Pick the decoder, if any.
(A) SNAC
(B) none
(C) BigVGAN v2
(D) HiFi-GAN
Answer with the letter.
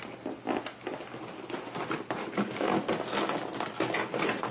B